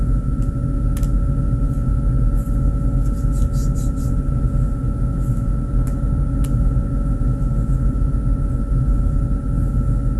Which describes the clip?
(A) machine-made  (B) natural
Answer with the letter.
B